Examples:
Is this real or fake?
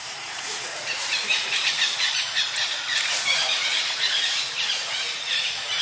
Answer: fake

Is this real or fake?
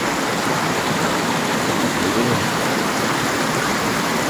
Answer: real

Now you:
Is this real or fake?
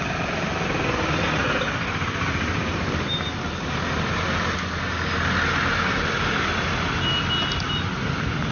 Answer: real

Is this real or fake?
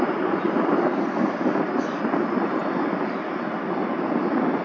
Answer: real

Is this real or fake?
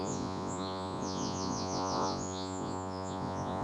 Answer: fake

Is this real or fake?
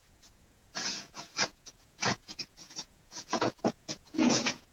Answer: fake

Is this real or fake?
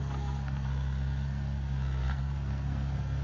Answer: fake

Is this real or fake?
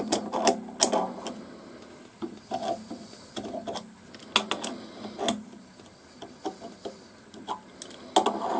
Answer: real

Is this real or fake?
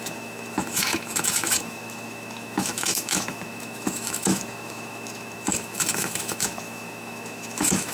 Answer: fake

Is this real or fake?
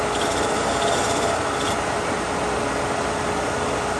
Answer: real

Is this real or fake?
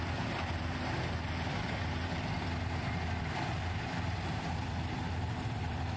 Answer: fake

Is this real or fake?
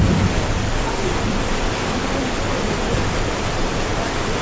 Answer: fake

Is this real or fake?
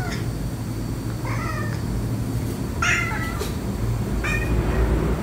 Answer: real